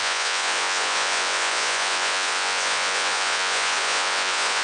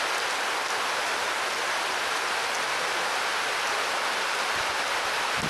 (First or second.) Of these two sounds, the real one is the second